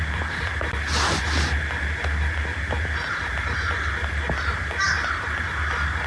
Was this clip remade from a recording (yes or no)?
no